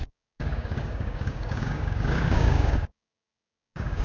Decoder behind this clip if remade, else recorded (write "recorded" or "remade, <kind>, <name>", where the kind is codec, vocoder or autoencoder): remade, codec, DAC